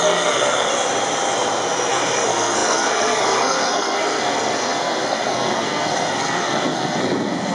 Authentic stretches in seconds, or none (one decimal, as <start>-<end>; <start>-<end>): 0.7-1.9